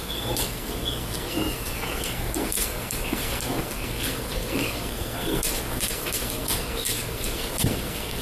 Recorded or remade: remade